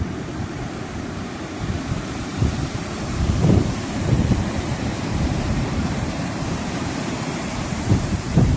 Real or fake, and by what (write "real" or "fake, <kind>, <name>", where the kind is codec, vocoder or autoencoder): fake, vocoder, BigVGAN v2